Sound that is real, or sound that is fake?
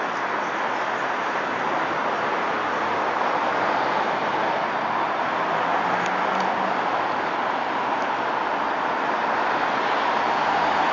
real